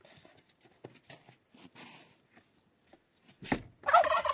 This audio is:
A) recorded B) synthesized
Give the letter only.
A